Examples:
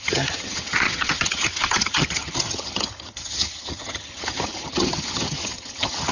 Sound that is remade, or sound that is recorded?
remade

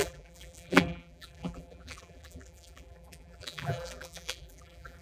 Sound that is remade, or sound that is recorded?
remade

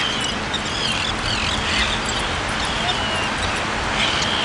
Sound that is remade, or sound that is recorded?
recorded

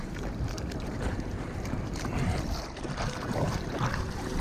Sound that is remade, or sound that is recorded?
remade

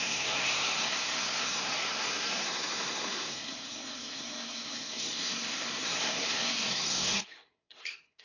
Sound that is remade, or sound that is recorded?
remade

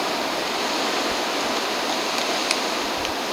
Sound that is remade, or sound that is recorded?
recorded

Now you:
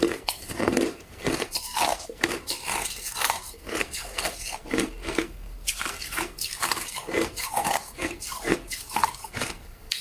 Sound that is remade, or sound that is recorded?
remade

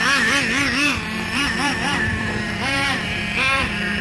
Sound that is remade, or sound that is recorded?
remade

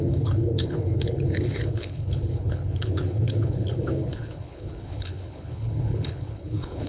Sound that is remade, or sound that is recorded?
remade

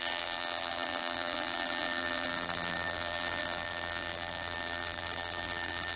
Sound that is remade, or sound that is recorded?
remade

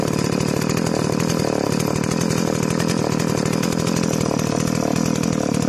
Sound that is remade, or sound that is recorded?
recorded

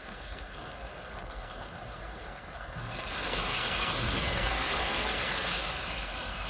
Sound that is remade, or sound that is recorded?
remade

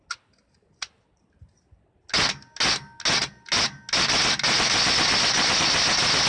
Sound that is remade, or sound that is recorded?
recorded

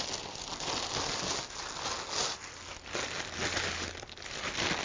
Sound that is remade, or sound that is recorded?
recorded